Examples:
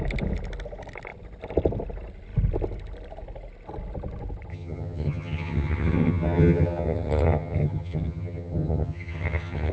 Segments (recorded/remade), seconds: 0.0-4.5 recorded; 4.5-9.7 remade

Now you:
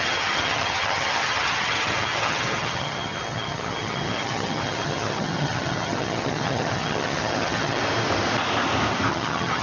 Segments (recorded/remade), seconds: 0.0-7.8 remade; 7.8-9.1 recorded; 9.1-9.6 remade